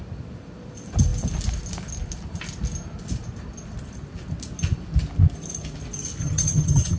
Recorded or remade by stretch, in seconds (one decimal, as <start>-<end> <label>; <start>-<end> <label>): 0.0-6.2 recorded; 6.2-7.0 remade